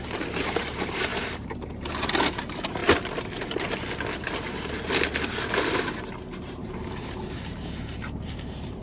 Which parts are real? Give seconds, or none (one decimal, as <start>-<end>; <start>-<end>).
2.8-6.5